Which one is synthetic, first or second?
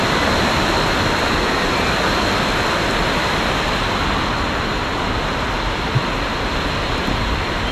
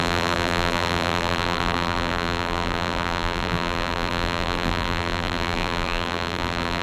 second